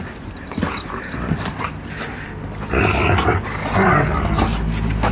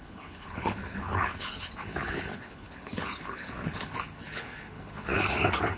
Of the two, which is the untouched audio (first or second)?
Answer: first